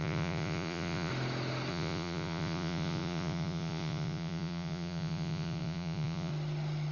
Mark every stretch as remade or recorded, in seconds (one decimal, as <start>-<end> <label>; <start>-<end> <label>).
0.0-1.1 remade; 1.1-1.7 recorded; 1.7-6.3 remade; 6.3-6.9 recorded